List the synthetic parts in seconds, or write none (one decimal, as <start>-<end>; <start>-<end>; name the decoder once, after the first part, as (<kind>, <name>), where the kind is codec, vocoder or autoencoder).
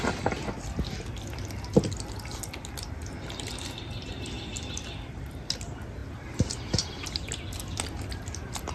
none